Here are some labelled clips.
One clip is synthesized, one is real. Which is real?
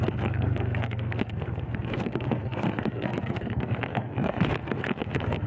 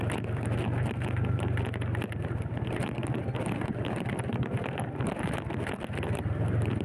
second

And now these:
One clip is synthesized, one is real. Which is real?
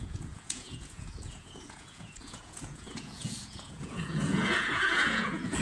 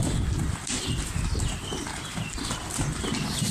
second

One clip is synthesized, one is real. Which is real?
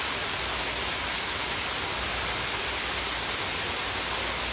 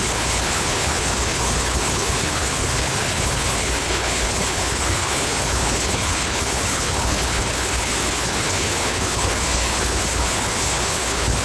first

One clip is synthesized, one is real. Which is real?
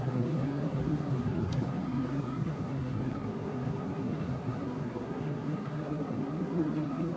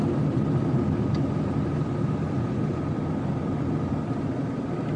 second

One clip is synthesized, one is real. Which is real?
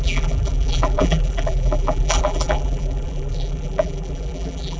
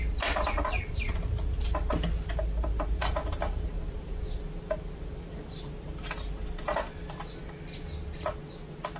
second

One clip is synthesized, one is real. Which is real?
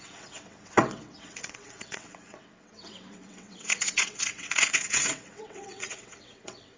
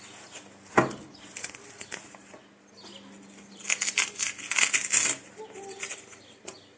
second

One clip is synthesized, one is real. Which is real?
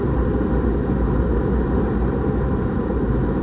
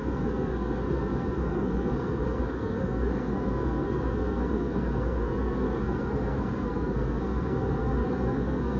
first